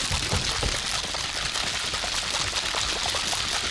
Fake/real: real